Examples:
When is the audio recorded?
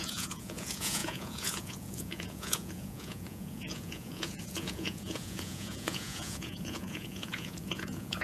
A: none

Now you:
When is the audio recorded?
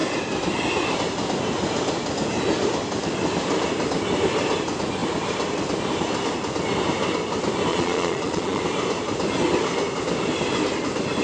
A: 0.0-7.7; 8.6-11.2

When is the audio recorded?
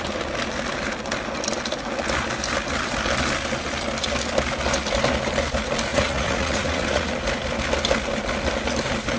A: 0.0-5.9; 7.1-9.2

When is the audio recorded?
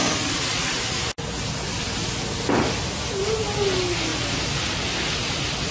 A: 0.0-5.7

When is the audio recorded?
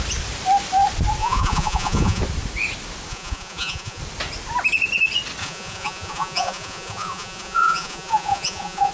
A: 0.0-1.2; 2.2-3.1; 4.0-5.4